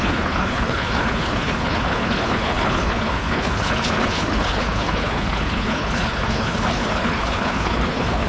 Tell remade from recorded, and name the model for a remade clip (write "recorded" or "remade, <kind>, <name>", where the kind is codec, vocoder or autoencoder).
remade, codec, HILCodec